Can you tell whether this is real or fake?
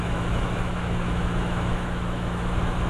fake